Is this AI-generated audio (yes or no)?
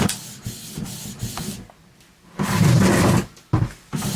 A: no